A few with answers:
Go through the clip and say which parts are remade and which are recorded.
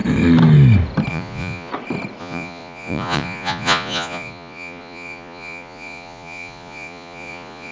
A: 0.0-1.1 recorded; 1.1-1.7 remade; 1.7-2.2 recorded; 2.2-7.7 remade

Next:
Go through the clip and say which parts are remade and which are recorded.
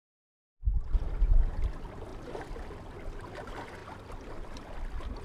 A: 0.0-2.1 recorded; 2.1-2.8 remade; 2.8-3.8 recorded; 3.8-5.2 remade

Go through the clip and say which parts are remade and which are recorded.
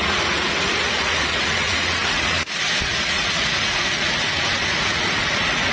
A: 0.0-5.7 remade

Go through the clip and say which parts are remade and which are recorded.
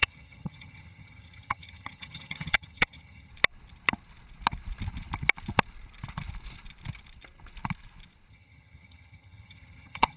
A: 0.0-3.3 remade; 3.3-8.3 recorded; 8.3-10.2 remade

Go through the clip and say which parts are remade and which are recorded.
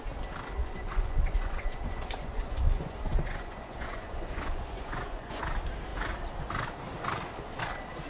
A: 0.0-0.6 recorded; 0.6-5.4 remade; 5.4-8.1 recorded